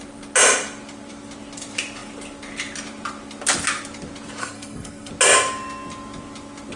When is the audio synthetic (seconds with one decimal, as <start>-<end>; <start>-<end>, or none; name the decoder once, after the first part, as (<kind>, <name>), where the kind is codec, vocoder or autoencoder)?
4.4-5.1 (codec, SNAC)